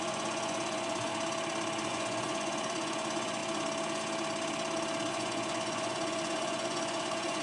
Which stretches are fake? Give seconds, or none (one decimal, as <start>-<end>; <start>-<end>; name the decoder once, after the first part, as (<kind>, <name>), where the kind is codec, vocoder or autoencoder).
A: 0.0-1.1 (vocoder, Vocos); 1.9-3.4; 5.1-7.4